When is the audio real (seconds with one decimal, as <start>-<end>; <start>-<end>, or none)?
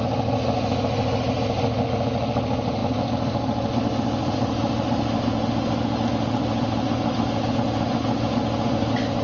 0.0-9.2